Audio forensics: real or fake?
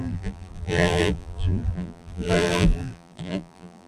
fake